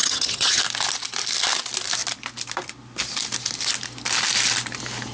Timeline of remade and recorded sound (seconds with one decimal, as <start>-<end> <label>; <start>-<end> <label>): 0.0-0.6 remade; 0.6-5.1 recorded